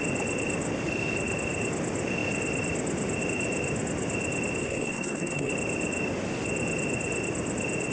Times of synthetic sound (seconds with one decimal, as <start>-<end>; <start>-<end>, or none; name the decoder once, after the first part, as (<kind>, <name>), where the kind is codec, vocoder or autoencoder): 4.6-5.5 (codec, SNAC)